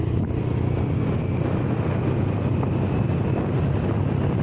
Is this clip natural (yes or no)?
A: yes